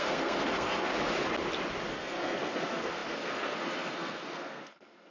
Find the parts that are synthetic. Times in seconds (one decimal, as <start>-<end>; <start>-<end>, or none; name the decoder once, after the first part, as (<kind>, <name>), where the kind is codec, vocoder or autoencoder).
0.0-0.9 (codec, SNAC); 1.9-5.1